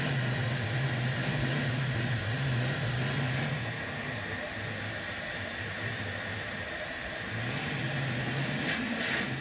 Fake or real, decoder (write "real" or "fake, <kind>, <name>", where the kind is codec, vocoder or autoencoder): real